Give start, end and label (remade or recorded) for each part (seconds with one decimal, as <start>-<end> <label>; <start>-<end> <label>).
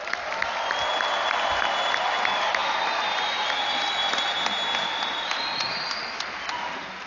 0.0-7.1 recorded